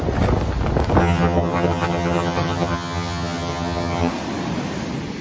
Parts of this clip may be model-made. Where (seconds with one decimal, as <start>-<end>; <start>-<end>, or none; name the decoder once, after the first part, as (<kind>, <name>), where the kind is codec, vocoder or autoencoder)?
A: 1.0-4.1 (vocoder, HiFi-GAN)